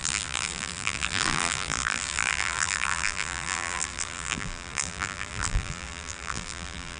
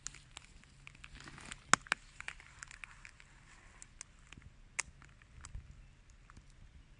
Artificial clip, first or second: first